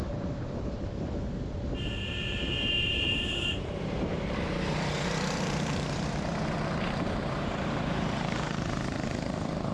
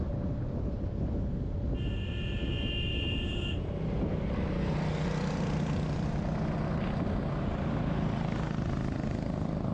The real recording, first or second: second